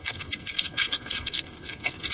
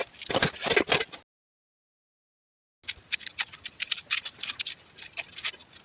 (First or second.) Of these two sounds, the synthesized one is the first